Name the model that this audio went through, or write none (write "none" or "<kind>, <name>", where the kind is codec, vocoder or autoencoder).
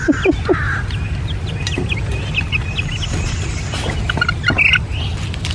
none